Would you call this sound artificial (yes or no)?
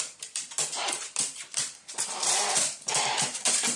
yes